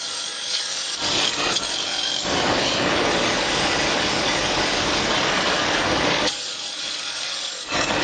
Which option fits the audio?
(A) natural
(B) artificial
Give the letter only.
B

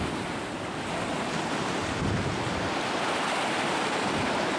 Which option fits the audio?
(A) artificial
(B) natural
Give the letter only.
B